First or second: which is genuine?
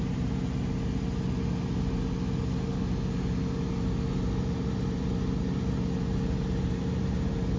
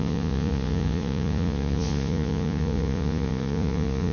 first